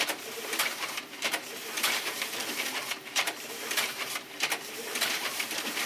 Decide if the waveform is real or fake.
fake